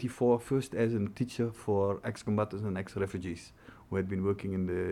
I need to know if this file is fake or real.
real